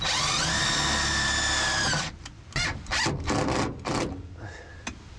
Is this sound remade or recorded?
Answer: recorded